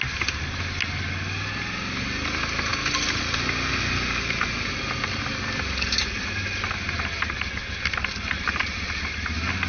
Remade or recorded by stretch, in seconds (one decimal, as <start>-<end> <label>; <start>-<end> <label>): 0.0-9.7 recorded